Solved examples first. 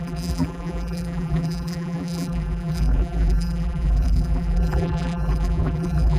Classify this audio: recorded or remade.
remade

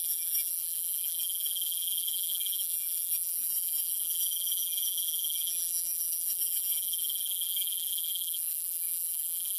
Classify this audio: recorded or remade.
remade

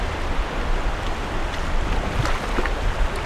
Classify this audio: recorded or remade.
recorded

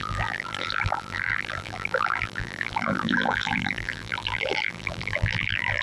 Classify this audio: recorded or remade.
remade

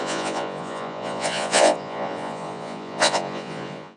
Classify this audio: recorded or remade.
remade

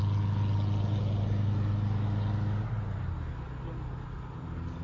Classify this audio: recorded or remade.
recorded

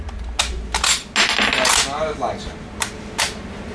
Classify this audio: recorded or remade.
recorded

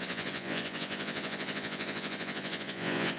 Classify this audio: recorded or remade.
remade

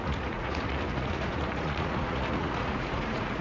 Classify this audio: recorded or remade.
remade